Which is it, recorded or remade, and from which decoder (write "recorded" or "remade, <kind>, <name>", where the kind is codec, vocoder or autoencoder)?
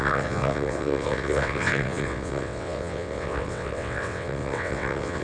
remade, vocoder, WaveNeXt